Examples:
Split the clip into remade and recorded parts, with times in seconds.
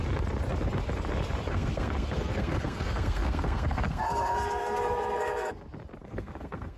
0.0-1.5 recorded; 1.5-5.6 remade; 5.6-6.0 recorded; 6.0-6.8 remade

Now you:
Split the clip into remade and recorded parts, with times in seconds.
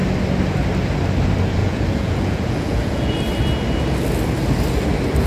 0.0-1.6 recorded; 1.6-3.2 remade; 3.2-5.3 recorded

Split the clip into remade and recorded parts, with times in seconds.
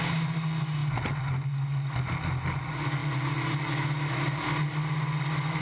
0.0-5.6 recorded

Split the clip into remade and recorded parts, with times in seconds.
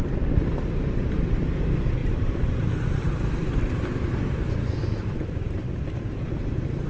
0.0-2.0 recorded; 2.0-5.9 remade; 5.9-6.9 recorded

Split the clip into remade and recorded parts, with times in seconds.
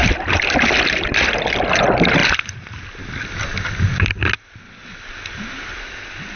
0.0-6.4 recorded